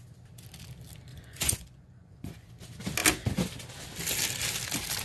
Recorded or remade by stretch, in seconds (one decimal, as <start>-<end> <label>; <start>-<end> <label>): 0.0-1.1 recorded; 1.1-2.5 remade; 2.5-5.0 recorded